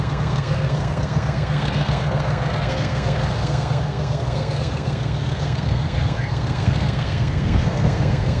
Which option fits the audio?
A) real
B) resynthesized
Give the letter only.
B